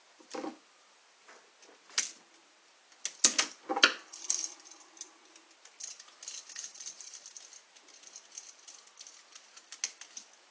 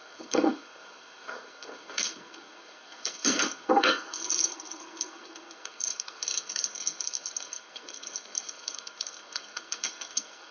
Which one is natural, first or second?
first